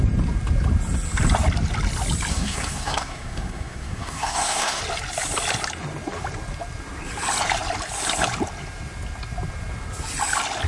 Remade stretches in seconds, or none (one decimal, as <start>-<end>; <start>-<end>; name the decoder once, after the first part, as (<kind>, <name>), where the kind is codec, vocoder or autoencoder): 2.3-4.8 (codec, SNAC)

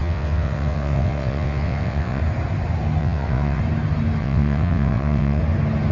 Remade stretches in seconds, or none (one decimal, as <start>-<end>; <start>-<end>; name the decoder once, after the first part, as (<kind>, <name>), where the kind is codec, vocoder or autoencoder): 0.0-2.2 (vocoder, WaveNeXt); 3.0-3.6; 4.2-5.4

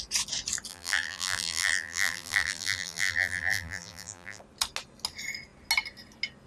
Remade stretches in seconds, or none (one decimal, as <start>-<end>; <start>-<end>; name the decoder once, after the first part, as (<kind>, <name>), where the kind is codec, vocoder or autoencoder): 0.7-4.4 (vocoder, BigVGAN v2)